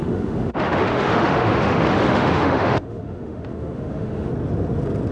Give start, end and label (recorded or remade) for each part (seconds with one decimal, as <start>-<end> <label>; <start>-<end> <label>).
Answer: 0.0-4.3 remade; 4.3-5.1 recorded